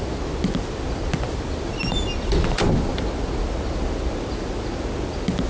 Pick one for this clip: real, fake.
real